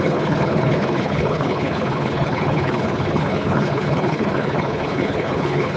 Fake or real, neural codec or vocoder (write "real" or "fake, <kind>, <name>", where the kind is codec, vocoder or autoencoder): fake, codec, HILCodec